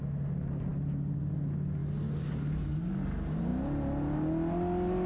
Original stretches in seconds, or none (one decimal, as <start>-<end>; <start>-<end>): 0.0-5.1